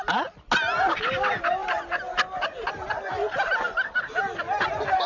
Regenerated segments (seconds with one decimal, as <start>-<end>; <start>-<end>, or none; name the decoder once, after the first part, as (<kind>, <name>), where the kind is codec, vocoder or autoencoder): none